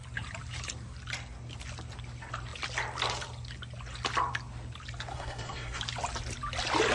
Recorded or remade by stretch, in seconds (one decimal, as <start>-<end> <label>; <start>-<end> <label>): 0.0-5.1 recorded; 5.1-5.8 remade; 5.8-6.9 recorded